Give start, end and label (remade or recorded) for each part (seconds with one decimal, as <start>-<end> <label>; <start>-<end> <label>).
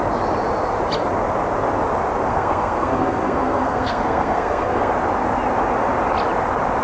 0.0-2.3 recorded; 2.3-4.9 remade; 4.9-6.8 recorded